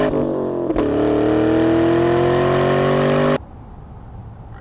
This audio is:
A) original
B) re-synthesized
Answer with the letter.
A